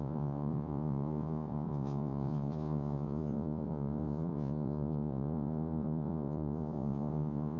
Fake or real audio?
fake